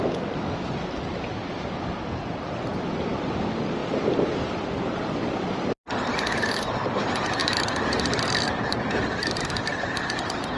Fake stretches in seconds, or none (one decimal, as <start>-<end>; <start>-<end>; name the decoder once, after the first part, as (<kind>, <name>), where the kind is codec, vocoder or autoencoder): 7.4-10.2 (vocoder, BigVGAN v2)